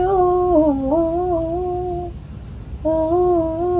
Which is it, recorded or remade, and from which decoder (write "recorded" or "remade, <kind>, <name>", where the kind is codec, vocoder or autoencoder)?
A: recorded